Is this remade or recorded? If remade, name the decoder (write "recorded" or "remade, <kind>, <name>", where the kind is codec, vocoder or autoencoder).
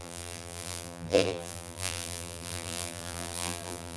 remade, vocoder, BigVGAN v2